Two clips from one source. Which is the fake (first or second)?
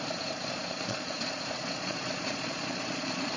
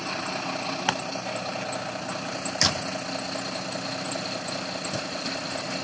first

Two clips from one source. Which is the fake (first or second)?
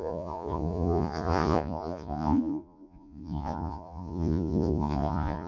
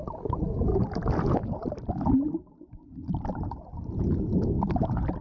first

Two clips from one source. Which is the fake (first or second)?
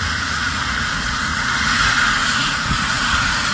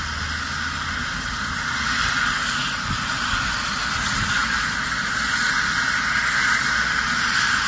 first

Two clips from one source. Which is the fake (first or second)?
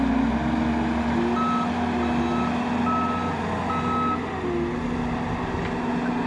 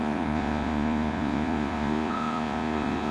second